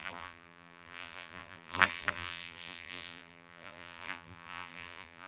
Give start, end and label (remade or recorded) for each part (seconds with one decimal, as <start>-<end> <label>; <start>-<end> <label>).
0.0-5.3 remade